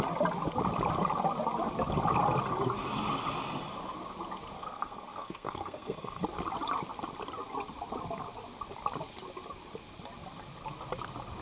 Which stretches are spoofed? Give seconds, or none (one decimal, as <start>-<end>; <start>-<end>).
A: 4.6-6.2